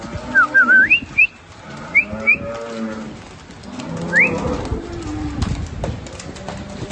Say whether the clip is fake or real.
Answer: real